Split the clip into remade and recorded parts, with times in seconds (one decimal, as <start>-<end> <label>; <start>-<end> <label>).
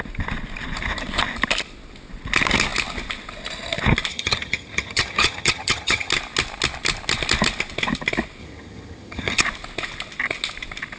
0.0-4.1 recorded; 4.1-6.1 remade; 6.1-8.4 recorded; 8.4-9.4 remade; 9.4-11.0 recorded